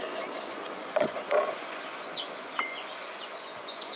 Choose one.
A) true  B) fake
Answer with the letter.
B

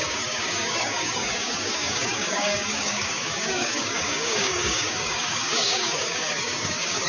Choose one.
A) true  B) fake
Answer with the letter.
B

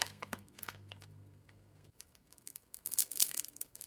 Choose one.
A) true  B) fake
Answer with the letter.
B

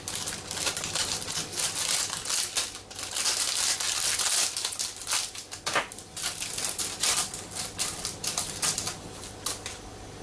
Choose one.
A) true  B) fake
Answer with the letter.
A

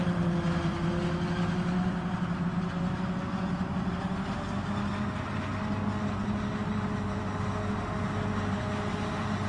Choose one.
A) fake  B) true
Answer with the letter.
B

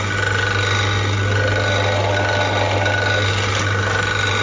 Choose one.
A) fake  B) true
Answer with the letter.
B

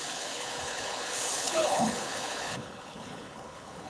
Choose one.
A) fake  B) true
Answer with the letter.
A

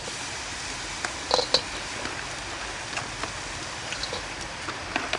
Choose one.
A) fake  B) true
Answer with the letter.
B